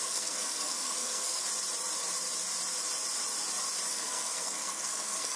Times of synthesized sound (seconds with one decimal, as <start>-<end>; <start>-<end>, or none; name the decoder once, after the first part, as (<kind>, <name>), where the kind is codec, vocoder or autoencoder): 0.0-1.4 (codec, SNAC); 3.9-5.4